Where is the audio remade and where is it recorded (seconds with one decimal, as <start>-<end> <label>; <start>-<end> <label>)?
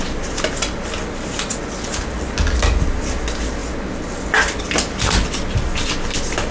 0.0-6.5 recorded